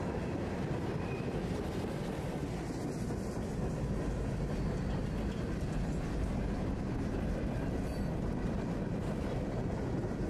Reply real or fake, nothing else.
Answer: real